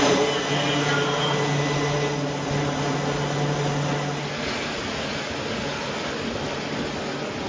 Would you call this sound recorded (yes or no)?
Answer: yes